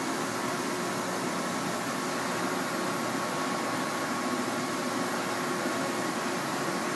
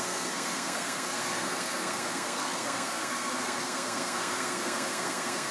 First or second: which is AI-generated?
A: second